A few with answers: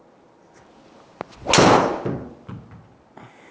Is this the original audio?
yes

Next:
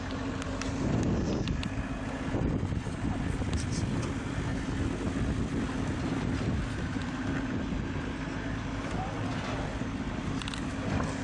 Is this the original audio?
yes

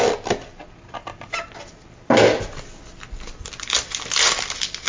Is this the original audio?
yes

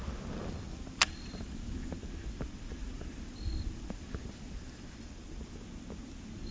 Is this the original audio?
yes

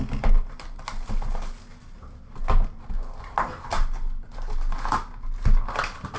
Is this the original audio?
yes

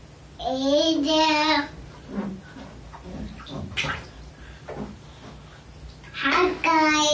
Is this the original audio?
yes